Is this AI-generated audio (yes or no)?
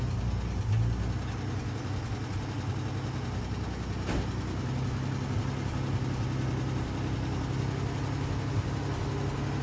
no